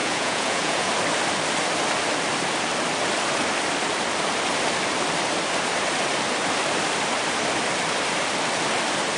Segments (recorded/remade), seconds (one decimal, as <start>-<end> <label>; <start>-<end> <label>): 0.0-0.9 remade; 0.9-9.2 recorded